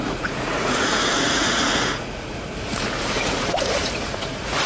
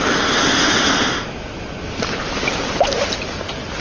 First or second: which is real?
second